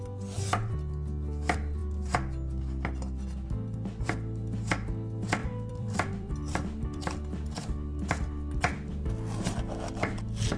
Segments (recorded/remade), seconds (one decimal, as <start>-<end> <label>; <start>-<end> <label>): 0.0-5.4 recorded; 5.4-7.0 remade; 7.0-10.6 recorded